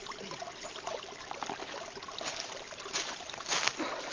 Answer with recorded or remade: recorded